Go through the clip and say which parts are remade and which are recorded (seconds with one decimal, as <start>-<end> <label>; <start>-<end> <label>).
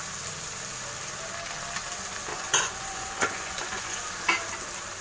0.0-2.3 recorded; 2.3-4.0 remade; 4.0-5.0 recorded